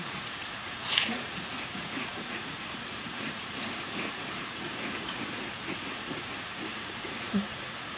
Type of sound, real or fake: fake